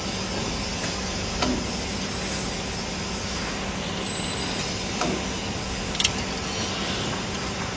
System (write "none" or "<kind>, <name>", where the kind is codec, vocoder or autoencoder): none